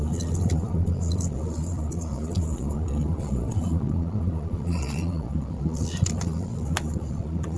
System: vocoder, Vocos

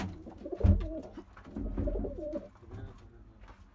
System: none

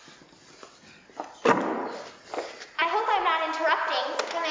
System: none